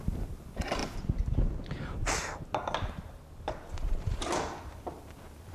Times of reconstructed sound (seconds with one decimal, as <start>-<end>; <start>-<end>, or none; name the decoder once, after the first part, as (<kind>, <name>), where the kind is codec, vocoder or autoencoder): 0.0-0.8 (vocoder, BigVGAN v2); 3.7-5.5